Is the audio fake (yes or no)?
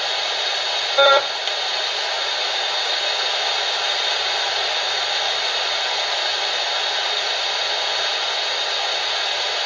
no